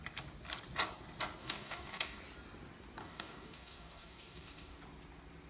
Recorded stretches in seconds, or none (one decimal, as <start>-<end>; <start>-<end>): 0.0-1.4; 2.2-3.0; 4.8-5.5